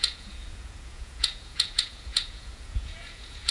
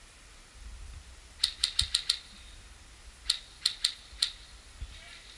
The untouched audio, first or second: second